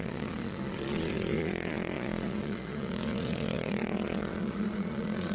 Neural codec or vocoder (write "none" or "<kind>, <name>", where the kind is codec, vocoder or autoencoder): vocoder, Vocos